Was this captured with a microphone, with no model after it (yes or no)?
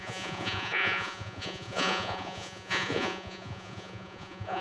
no